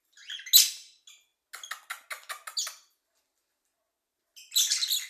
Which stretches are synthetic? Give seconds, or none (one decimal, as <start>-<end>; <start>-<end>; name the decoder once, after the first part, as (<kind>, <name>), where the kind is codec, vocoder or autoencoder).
none